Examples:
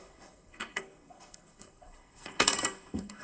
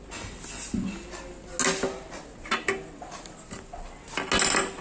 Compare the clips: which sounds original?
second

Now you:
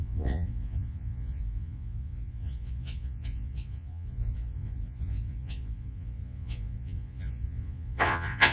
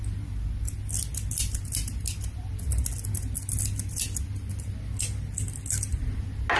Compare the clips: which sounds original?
second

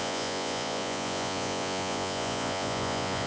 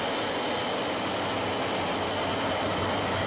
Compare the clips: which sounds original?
second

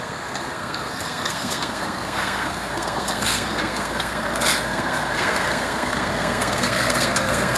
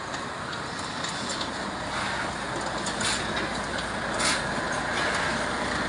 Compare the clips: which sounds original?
second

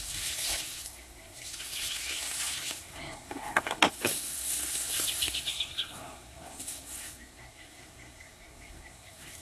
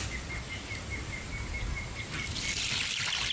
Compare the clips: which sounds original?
second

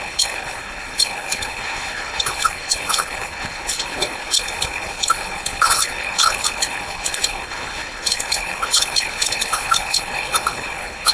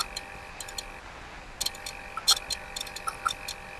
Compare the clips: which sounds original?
second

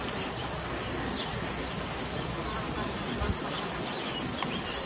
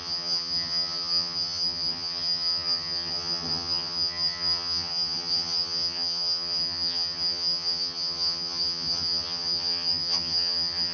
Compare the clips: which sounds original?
first